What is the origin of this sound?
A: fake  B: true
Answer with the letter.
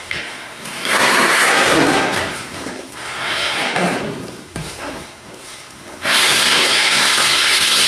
A